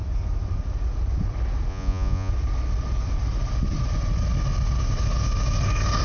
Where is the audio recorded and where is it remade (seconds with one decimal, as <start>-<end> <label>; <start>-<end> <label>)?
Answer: 0.0-1.7 recorded; 1.7-2.3 remade; 2.3-6.0 recorded